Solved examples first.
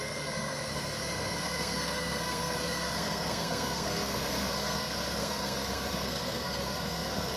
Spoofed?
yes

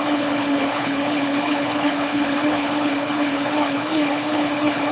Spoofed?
yes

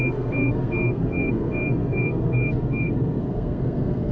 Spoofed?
yes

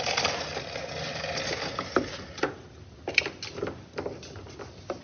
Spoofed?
no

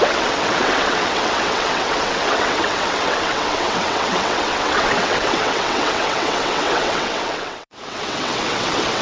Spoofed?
yes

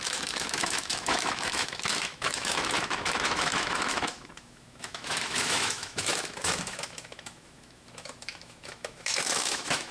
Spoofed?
yes